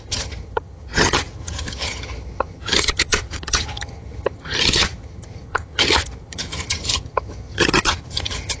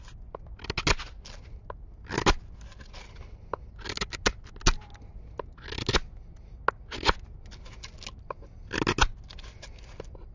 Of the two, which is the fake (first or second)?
first